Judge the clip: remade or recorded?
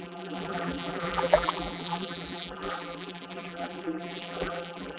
remade